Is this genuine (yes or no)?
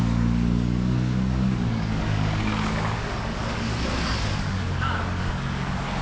no